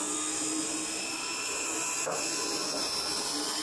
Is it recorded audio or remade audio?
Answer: recorded